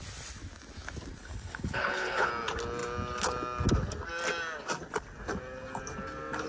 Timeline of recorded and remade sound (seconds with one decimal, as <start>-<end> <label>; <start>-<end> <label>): 0.0-1.2 recorded; 1.2-2.3 remade; 2.3-6.5 recorded